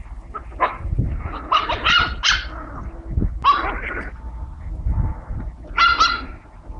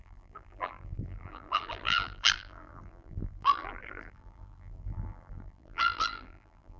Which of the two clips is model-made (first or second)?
second